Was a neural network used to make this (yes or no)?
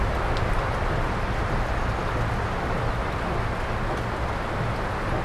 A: no